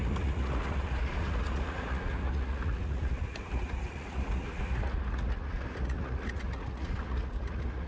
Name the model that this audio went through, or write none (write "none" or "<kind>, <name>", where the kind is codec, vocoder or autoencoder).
vocoder, Vocos